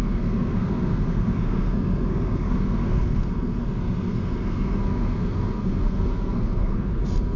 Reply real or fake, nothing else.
fake